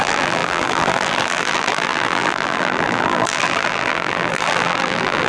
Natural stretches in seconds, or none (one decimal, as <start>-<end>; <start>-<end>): none